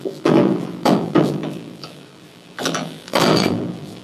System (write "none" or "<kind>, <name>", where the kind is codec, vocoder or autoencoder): vocoder, BigVGAN v2